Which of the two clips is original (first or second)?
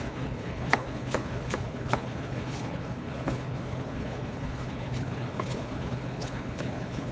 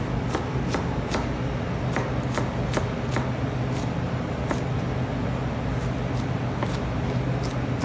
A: second